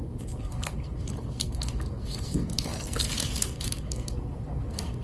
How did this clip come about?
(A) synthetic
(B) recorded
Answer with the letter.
A